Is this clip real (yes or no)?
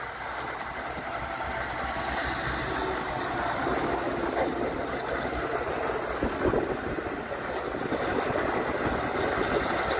yes